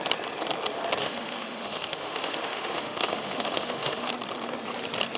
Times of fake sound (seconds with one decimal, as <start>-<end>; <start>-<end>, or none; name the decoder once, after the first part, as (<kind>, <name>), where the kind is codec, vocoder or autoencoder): 1.0-4.1 (autoencoder, DAC-VAE)